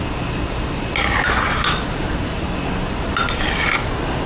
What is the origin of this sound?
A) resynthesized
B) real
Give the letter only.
B